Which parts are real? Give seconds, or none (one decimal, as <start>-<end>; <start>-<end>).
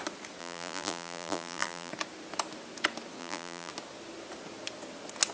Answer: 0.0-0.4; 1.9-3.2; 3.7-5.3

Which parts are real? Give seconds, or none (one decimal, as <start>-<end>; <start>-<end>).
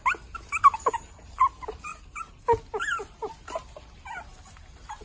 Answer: 0.0-1.9; 3.3-5.0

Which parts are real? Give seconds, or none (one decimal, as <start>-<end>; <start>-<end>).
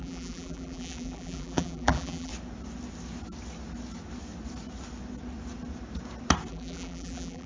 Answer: 2.3-6.5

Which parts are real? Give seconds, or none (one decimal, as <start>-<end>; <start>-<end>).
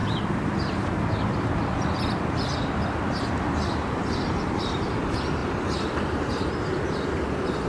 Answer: 4.3-5.4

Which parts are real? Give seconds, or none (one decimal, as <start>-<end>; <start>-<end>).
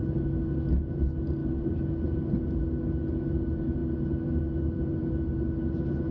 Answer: 0.0-1.4; 2.2-6.1